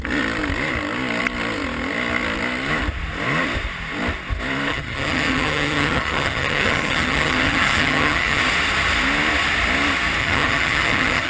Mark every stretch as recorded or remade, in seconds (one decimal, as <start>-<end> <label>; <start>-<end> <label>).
0.0-4.7 recorded; 4.7-8.4 remade; 8.4-10.2 recorded; 10.2-11.3 remade